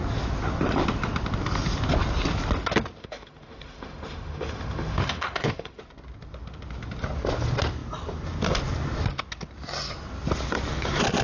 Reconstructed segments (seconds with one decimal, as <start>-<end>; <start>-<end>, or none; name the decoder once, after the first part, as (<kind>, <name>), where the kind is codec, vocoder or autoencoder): 3.0-5.8 (autoencoder, DAC-VAE)